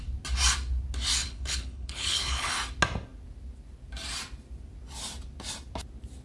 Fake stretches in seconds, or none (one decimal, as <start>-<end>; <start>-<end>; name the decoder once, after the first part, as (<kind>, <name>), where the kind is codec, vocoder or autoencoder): 1.2-2.5 (codec, HILCodec)

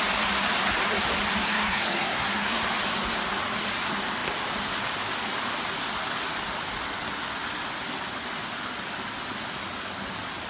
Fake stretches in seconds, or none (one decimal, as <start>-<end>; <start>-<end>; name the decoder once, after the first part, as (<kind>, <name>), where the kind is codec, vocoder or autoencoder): 1.4-2.6 (codec, SNAC)

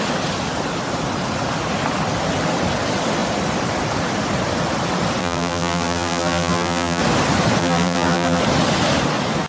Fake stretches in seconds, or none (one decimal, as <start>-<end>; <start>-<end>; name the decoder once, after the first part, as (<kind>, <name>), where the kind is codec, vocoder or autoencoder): 5.2-7.0 (vocoder, BigVGAN v2); 7.6-8.4

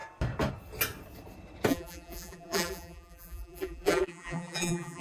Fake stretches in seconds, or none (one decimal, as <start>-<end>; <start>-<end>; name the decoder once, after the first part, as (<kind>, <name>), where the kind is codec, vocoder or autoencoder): 1.7-5.0 (vocoder, BigVGAN v2)

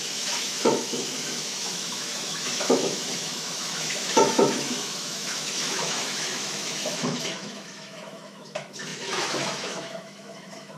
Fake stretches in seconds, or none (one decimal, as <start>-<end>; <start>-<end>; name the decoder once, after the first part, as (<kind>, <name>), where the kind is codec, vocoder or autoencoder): 0.0-10.8 (autoencoder, DAC-VAE)

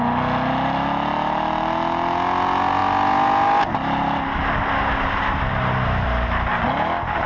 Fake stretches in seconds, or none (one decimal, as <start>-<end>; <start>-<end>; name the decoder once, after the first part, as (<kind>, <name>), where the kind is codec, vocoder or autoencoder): none

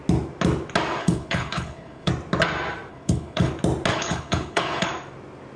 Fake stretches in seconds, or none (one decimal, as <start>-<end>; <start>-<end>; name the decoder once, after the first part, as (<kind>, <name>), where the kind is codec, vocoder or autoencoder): 1.0-2.1 (codec, HILCodec); 2.9-3.5; 3.9-4.9